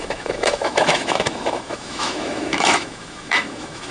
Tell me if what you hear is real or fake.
fake